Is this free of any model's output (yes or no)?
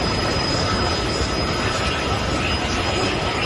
yes